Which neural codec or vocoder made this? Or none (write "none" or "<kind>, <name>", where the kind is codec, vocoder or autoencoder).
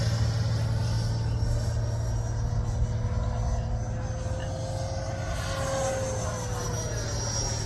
none